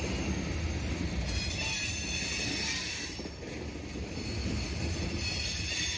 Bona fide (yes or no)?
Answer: yes